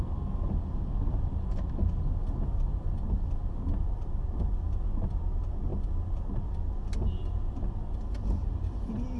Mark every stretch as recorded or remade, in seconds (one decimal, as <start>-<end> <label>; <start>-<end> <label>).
0.0-8.4 recorded; 8.4-9.2 remade

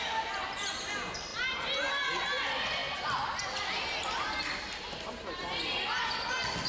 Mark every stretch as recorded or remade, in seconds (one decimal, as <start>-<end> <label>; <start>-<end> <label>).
0.0-1.3 recorded; 1.3-1.9 remade; 1.9-6.7 recorded

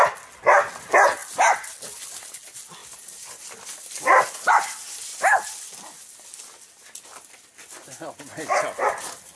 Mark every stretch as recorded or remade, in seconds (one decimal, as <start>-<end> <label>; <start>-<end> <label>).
0.0-1.2 recorded; 1.2-2.2 remade; 2.2-9.4 recorded

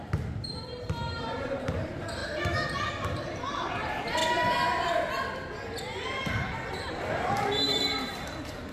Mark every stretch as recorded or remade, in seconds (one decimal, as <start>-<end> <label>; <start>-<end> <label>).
0.0-2.2 remade; 2.2-2.9 recorded; 2.9-4.2 remade; 4.2-6.9 recorded; 6.9-8.7 remade